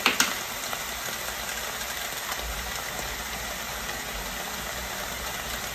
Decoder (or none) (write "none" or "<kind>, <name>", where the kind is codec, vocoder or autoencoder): none